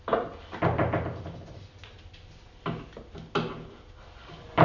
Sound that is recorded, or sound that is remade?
recorded